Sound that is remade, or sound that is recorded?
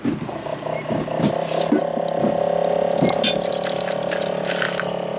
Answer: recorded